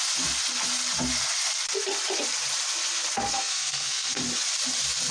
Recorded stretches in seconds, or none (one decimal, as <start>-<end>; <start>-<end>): 0.0-3.3; 4.2-5.1